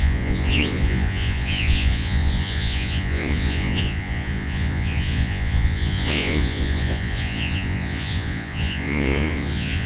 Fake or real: fake